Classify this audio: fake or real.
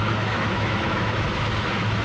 fake